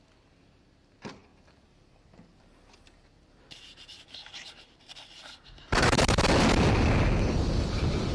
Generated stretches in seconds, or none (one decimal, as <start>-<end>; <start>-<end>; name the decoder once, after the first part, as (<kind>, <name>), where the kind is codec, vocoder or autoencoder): 1.3-6.2 (vocoder, BigVGAN v2)